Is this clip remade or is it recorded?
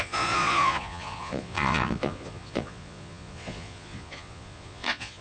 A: remade